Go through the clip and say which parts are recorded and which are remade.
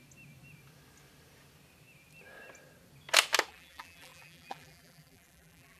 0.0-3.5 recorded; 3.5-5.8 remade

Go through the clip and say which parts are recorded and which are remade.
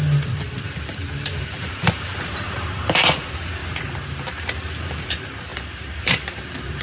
0.0-3.6 remade; 3.6-4.8 recorded; 4.8-6.8 remade